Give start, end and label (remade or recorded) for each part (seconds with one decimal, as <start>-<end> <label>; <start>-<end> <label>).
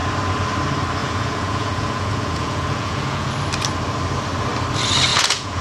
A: 0.0-1.0 recorded; 1.0-3.3 remade; 3.3-5.1 recorded; 5.1-5.6 remade